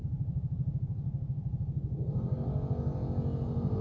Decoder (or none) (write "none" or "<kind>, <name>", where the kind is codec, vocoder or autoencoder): none